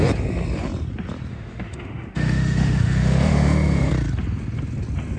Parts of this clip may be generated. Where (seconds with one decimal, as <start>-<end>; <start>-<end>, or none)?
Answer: 1.3-3.9